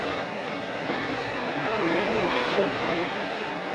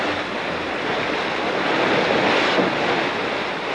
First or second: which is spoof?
first